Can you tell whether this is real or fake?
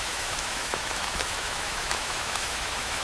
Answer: fake